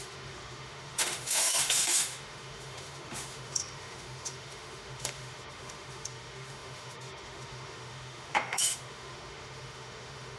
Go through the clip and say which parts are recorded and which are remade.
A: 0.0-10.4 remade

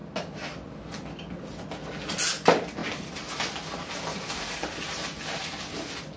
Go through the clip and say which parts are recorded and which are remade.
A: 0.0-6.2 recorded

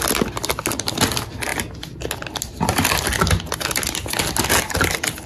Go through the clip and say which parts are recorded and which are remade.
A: 0.0-5.3 recorded

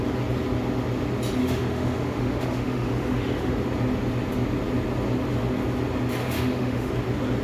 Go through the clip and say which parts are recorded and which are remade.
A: 0.0-1.4 recorded; 1.4-3.5 remade; 3.5-6.2 recorded; 6.2-6.9 remade; 6.9-7.4 recorded

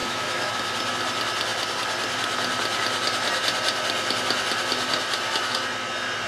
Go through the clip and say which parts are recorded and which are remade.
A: 0.0-0.5 remade; 0.5-6.3 recorded